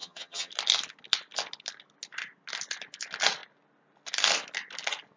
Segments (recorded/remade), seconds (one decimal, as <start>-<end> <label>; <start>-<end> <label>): 0.0-0.5 remade; 0.5-5.2 recorded